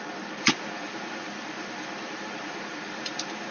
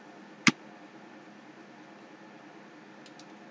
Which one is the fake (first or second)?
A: first